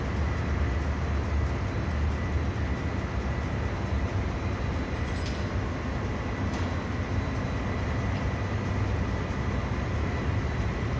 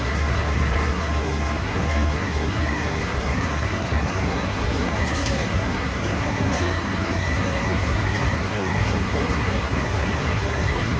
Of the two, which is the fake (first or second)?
second